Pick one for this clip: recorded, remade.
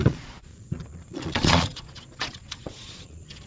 remade